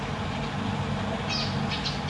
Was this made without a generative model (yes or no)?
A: yes